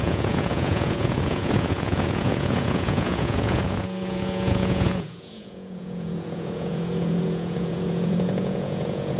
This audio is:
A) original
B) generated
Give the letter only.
B